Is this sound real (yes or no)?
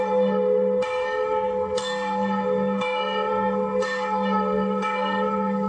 no